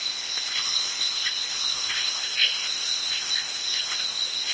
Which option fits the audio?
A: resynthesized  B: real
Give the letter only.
A